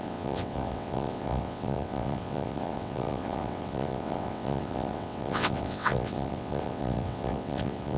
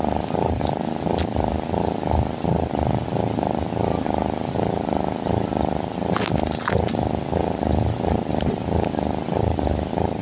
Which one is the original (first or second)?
second